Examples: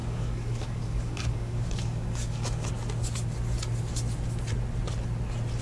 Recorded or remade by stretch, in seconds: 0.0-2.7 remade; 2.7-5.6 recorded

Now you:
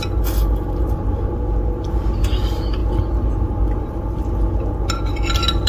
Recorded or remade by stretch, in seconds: 0.0-5.7 recorded

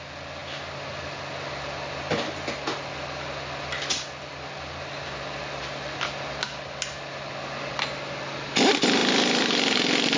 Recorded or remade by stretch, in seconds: 0.0-10.2 recorded

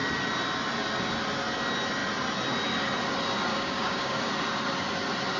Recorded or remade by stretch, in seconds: 0.0-3.5 recorded; 3.5-4.3 remade; 4.3-5.4 recorded